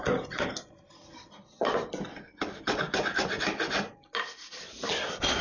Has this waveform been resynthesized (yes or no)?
no